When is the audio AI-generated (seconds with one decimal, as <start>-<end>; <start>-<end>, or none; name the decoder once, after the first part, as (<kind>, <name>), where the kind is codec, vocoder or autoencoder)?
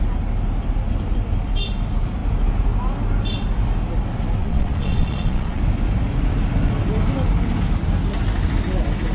4.4-5.6 (vocoder, Vocos)